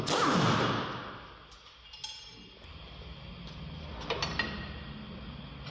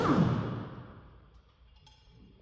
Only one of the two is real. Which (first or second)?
first